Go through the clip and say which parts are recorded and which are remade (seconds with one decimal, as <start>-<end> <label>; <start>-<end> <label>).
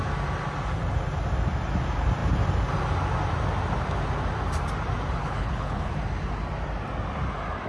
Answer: 0.0-5.2 recorded; 5.2-5.9 remade; 5.9-7.7 recorded